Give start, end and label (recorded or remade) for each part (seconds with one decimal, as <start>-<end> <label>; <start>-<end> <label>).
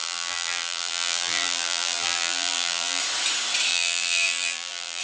0.0-3.0 remade; 3.0-3.7 recorded; 3.7-5.0 remade